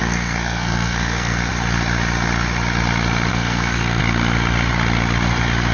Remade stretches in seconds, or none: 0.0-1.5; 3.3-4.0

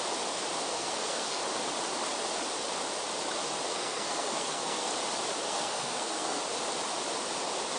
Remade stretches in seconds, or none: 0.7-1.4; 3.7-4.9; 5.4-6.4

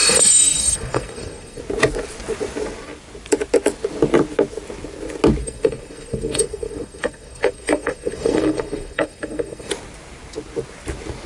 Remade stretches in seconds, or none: 0.0-1.6; 5.4-9.7

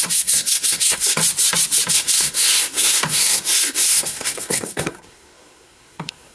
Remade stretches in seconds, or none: 0.0-1.2; 1.9-6.3